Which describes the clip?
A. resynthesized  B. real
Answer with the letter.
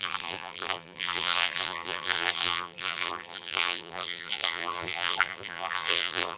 A